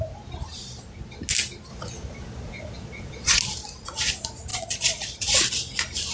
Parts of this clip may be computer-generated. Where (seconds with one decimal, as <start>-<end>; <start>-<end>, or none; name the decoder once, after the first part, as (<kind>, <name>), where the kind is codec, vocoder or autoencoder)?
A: 1.7-3.4 (vocoder, Vocos); 4.5-5.2